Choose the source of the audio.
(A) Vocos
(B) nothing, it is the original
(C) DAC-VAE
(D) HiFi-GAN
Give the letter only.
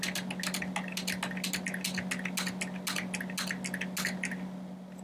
B